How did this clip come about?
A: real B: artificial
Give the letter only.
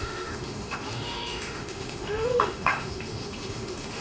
B